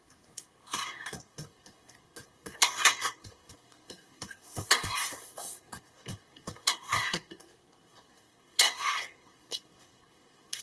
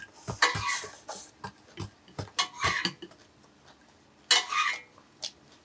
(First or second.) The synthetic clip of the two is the first